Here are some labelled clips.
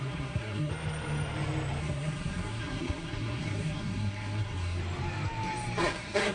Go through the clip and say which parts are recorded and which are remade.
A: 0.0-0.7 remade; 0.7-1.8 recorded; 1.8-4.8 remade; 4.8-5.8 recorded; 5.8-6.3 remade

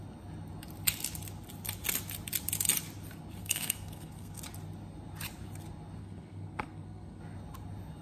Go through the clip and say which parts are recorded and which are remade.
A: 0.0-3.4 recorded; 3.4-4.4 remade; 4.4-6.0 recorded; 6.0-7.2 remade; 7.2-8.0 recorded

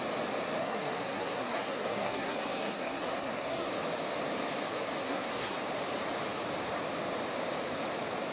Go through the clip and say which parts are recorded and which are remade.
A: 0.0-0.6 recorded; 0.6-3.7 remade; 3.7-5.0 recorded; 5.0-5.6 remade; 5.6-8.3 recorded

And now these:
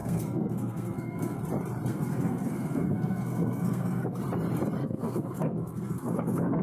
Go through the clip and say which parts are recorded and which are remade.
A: 0.0-1.4 remade; 1.4-1.9 recorded; 1.9-4.2 remade; 4.2-4.8 recorded; 4.8-6.6 remade

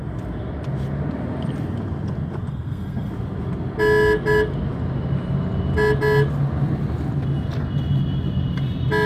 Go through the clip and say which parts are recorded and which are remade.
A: 0.0-2.5 recorded; 2.5-3.1 remade; 3.1-9.1 recorded

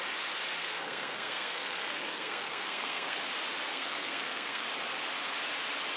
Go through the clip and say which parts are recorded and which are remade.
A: 0.0-0.6 recorded; 0.6-3.2 remade; 3.2-3.7 recorded; 3.7-4.7 remade; 4.7-6.0 recorded

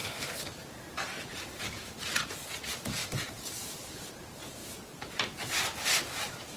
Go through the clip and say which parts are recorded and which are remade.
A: 0.0-0.5 remade; 0.5-6.6 recorded

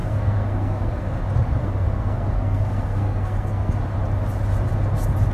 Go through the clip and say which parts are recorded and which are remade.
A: 0.0-1.2 remade; 1.2-1.6 recorded; 1.6-3.7 remade; 3.7-5.3 recorded